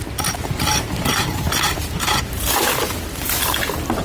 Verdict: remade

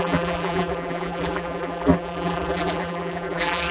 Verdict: remade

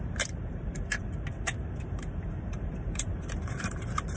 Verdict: remade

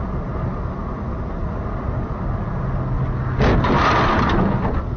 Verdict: recorded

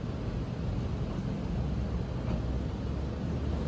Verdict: recorded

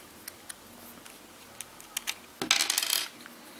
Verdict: recorded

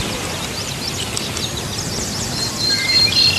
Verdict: remade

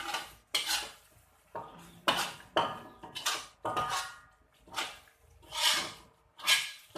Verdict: recorded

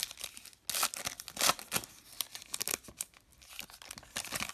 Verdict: recorded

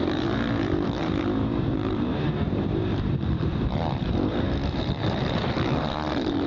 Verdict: remade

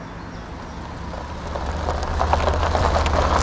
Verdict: recorded